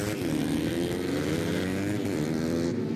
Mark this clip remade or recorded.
remade